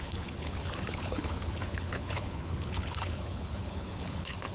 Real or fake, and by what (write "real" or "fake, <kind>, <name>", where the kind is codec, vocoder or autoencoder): fake, codec, HILCodec